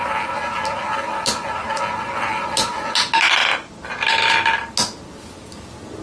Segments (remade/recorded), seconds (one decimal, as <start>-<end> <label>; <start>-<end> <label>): 0.0-6.0 recorded